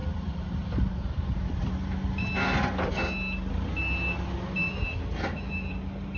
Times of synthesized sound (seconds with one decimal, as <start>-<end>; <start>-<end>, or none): 0.0-1.6; 4.6-5.7

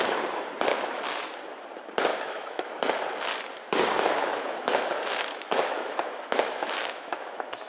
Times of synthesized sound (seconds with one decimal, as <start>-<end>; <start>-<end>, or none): 0.7-1.3; 2.1-2.7; 4.2-7.7

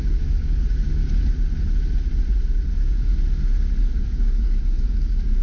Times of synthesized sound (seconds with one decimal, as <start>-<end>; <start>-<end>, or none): 0.0-1.0; 2.7-3.1; 3.8-5.4